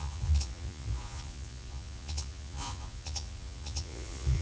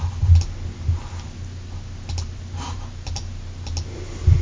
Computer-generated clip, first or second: first